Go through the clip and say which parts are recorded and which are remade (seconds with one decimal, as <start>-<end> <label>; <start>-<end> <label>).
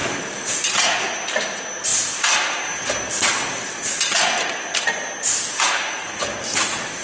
0.0-7.0 recorded